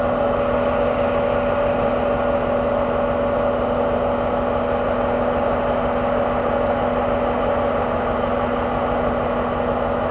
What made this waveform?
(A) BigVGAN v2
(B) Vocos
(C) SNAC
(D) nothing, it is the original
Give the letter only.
D